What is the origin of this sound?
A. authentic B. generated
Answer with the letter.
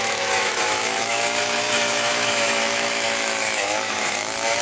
B